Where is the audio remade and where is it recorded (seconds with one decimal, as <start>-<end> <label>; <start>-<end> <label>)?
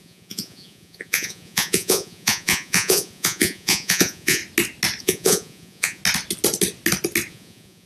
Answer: 0.0-4.4 remade; 4.4-5.0 recorded; 5.0-6.0 remade; 6.0-7.3 recorded; 7.3-7.9 remade